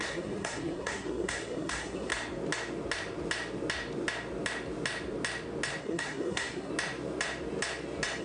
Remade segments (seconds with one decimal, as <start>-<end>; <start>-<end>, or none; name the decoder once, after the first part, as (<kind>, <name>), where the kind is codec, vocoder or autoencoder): 0.0-2.1 (codec, SNAC); 5.8-6.7